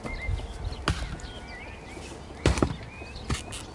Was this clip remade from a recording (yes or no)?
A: no